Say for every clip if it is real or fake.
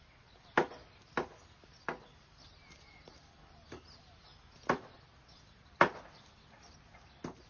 real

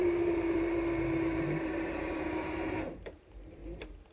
fake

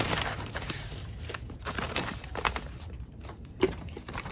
fake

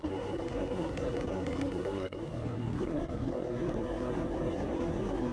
fake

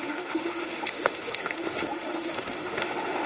fake